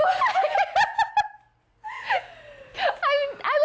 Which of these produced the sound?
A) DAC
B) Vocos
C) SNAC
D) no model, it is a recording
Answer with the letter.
D